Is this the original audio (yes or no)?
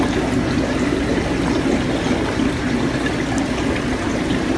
yes